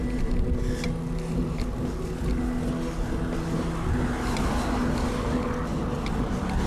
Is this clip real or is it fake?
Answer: real